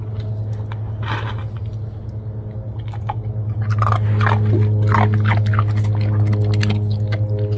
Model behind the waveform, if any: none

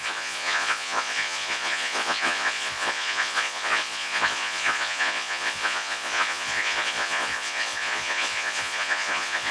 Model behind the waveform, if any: vocoder, Vocos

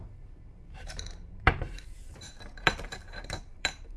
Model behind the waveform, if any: vocoder, BigVGAN v2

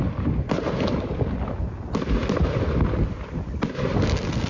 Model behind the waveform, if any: none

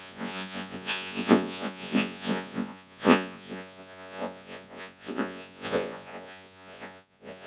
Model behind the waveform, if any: vocoder, Vocos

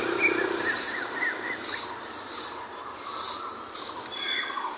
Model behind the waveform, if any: none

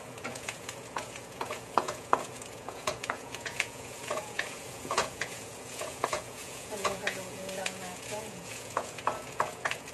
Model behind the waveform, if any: vocoder, Vocos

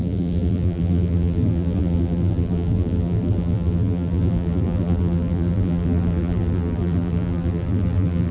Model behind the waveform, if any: vocoder, BigVGAN v2